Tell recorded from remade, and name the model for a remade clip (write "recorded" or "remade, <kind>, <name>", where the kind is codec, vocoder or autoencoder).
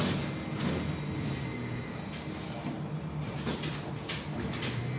recorded